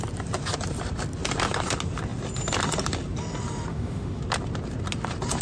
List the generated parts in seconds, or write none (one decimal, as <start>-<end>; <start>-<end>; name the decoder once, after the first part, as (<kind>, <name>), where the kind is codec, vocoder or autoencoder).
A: 3.7-4.2 (autoencoder, DAC-VAE)